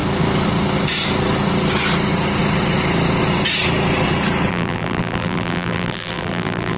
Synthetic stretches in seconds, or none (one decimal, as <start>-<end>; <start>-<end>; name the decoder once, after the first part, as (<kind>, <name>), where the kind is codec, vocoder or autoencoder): 4.5-6.8 (vocoder, BigVGAN v2)